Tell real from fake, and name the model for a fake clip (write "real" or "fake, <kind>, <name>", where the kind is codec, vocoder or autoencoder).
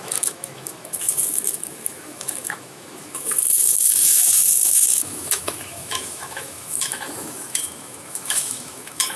fake, autoencoder, DAC-VAE